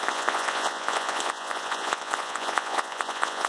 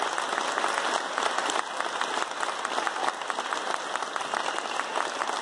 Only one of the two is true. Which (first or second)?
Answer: second